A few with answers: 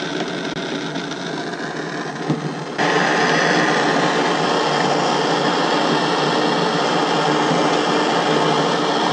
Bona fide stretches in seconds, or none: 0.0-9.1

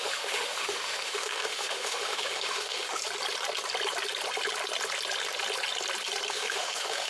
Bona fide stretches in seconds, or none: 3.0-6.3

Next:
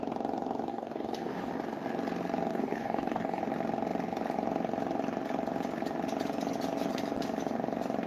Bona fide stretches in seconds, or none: 0.0-0.7; 1.5-2.5; 3.4-8.1

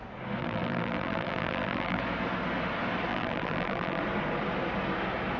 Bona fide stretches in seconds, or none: 0.0-0.4; 2.0-3.1; 4.0-5.4

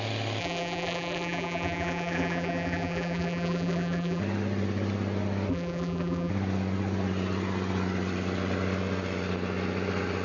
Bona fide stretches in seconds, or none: 0.0-0.4; 4.2-5.5; 6.3-10.2

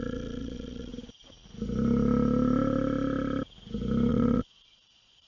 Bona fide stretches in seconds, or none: 0.9-4.1